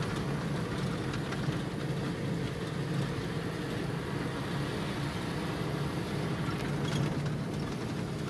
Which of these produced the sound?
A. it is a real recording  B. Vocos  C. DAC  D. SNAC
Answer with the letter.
A